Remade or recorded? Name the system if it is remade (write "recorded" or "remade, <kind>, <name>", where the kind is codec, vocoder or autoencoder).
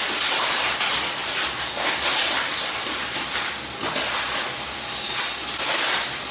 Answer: recorded